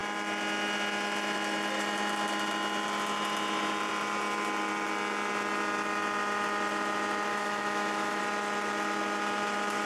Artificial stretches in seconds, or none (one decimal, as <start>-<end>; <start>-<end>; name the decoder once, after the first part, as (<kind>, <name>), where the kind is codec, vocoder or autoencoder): 7.3-8.2 (autoencoder, DAC-VAE)